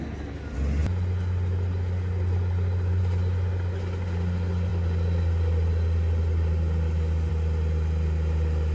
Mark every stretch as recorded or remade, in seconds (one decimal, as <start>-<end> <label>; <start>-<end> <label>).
0.0-8.7 recorded